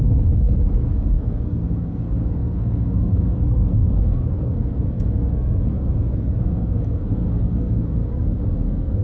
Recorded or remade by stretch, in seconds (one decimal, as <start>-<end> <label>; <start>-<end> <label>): 0.0-9.0 remade